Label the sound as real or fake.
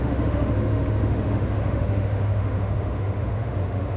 fake